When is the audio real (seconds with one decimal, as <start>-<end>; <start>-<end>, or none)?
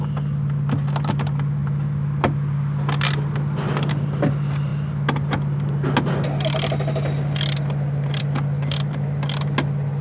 0.0-10.0